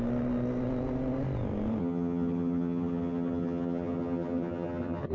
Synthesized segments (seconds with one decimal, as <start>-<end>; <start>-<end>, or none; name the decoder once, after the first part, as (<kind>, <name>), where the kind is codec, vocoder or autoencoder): 1.8-5.1 (vocoder, HiFi-GAN)